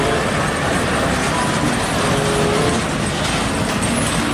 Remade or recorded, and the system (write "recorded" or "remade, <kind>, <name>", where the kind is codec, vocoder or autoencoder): recorded